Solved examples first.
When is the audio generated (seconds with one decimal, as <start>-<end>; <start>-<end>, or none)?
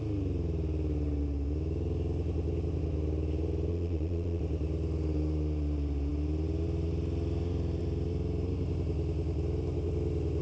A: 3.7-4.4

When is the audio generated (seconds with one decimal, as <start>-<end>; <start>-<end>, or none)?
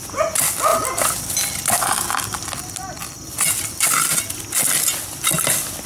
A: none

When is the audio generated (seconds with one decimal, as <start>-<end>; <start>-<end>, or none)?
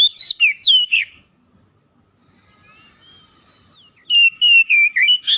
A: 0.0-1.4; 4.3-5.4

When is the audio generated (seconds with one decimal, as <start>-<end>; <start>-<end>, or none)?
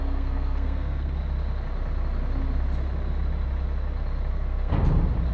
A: 0.0-1.2; 4.3-4.7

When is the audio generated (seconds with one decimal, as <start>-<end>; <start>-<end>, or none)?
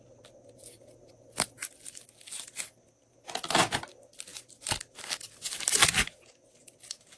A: none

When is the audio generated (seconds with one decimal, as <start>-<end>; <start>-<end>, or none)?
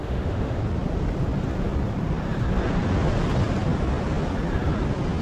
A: 0.0-0.6